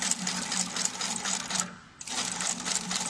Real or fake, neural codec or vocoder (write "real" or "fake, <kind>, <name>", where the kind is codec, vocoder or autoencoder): real